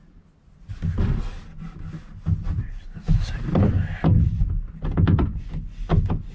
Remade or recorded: recorded